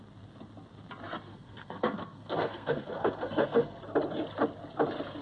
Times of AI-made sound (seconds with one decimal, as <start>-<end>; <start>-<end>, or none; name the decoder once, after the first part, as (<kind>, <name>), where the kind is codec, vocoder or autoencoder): 1.3-3.8 (codec, SNAC)